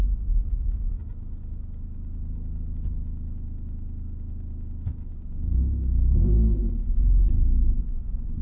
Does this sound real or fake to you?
real